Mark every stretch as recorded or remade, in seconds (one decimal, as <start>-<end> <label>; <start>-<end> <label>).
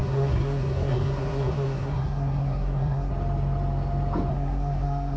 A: 0.0-3.1 remade; 3.1-4.3 recorded; 4.3-5.2 remade